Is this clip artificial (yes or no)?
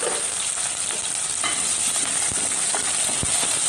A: no